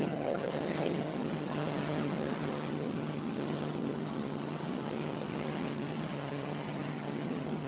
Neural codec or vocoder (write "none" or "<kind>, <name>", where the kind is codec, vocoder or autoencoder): vocoder, HiFi-GAN